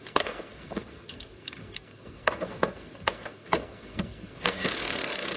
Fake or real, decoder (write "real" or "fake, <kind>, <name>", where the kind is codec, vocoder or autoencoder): fake, codec, SNAC